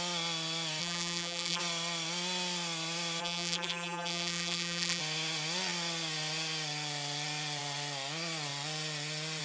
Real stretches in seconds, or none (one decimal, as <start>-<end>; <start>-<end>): 0.0-0.8; 1.6-3.2; 5.0-9.4

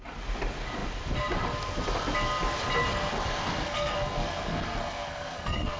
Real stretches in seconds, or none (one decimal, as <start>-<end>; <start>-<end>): 0.0-2.9